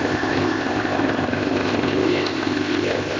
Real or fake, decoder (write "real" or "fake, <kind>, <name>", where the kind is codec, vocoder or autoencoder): fake, codec, ZipCodec